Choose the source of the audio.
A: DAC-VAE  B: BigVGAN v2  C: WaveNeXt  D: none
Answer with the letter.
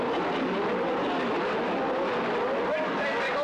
B